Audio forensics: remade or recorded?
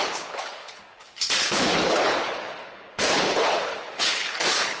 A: remade